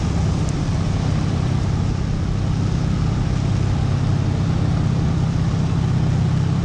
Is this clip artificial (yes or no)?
no